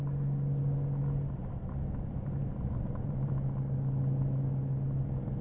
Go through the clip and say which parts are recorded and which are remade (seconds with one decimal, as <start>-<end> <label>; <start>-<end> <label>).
0.0-1.4 recorded; 1.4-3.3 remade; 3.3-5.4 recorded